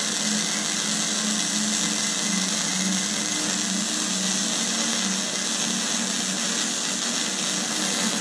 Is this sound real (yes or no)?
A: yes